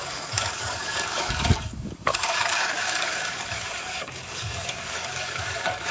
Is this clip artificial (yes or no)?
yes